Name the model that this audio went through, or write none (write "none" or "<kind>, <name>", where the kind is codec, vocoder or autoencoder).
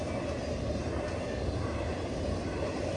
none